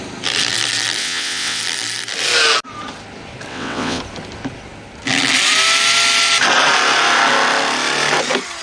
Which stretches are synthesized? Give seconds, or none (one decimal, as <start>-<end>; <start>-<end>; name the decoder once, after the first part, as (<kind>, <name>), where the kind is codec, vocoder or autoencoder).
1.0-1.6 (vocoder, WaveNeXt); 3.5-4.0